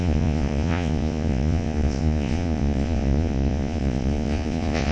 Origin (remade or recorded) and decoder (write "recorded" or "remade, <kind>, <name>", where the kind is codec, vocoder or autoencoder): remade, vocoder, Vocos